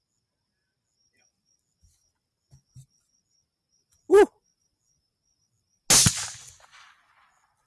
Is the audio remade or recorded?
recorded